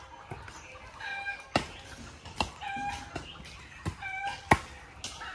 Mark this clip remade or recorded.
recorded